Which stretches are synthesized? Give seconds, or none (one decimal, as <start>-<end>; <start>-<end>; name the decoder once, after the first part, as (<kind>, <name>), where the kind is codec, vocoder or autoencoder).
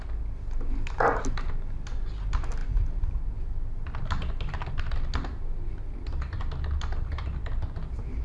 none